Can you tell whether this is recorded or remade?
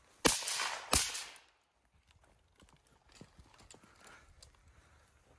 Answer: recorded